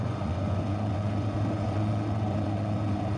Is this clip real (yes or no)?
no